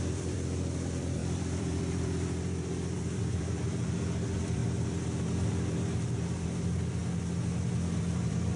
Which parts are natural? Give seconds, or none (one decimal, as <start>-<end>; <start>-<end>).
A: 4.6-5.4; 7.0-7.9